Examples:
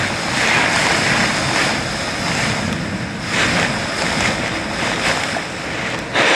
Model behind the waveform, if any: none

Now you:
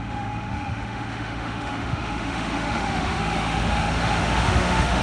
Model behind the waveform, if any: autoencoder, DAC-VAE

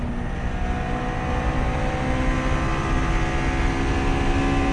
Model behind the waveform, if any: none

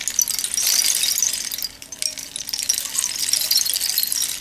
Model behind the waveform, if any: none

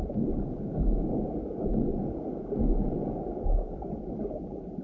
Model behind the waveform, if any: none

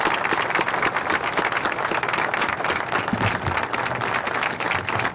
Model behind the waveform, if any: none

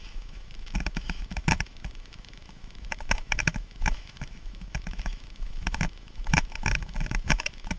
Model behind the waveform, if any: autoencoder, DAC-VAE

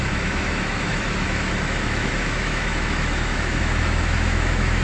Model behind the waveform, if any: autoencoder, DAC-VAE